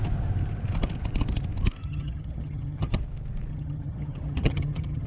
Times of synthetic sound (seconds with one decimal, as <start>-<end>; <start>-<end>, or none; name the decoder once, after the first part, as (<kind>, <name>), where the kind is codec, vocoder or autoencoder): 1.8-3.0 (vocoder, HiFi-GAN); 3.5-5.1

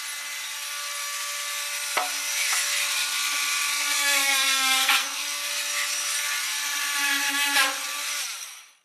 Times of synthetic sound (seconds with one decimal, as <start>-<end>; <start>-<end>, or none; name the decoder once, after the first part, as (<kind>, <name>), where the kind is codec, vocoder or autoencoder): 3.7-5.5 (codec, SNAC)

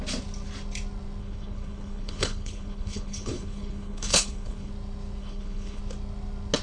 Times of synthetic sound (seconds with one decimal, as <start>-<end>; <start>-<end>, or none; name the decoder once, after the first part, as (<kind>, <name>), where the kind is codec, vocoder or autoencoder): 1.2-4.7 (codec, HILCodec); 5.2-5.8

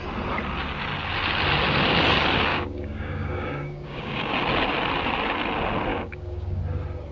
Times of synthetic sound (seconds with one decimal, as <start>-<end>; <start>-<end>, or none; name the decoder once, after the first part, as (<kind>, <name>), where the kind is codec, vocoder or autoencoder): 2.5-4.3 (codec, DAC); 5.9-6.6

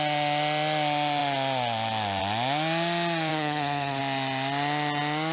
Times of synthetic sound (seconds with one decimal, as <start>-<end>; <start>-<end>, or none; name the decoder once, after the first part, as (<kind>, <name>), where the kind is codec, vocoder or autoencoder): 3.3-4.0 (vocoder, HiFi-GAN)

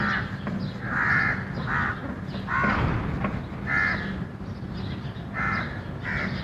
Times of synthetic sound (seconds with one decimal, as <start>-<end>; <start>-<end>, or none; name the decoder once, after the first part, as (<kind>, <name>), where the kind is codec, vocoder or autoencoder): none

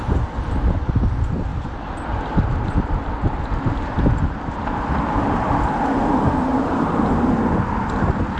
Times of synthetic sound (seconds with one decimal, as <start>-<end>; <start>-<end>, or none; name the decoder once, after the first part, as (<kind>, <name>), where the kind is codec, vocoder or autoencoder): 6.5-7.1 (vocoder, BigVGAN v2)